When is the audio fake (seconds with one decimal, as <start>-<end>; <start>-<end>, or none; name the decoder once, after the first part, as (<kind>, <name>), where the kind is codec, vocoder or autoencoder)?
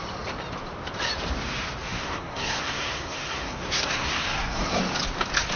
1.9-4.8 (codec, SNAC)